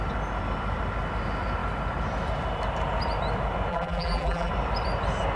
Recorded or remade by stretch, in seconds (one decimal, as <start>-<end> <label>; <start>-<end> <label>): 0.0-3.7 recorded; 3.7-4.5 remade; 4.5-5.4 recorded